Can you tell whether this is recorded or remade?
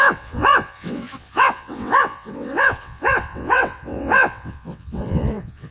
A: remade